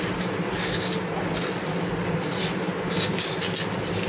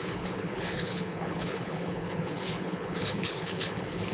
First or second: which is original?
first